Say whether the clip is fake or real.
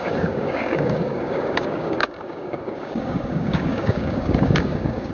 fake